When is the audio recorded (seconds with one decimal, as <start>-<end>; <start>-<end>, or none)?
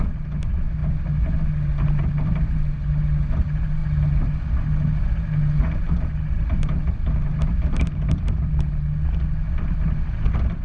0.0-10.6